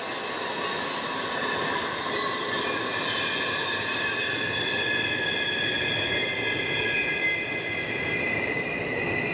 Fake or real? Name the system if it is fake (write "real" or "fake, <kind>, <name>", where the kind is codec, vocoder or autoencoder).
real